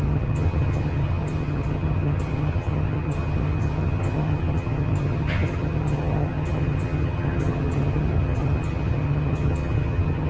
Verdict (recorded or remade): remade